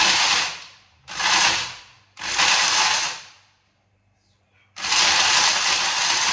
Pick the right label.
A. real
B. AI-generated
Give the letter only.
A